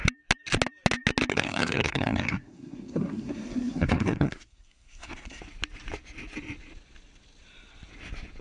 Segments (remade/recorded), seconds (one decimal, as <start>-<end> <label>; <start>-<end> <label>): 0.0-1.3 recorded; 1.3-5.4 remade; 5.4-8.4 recorded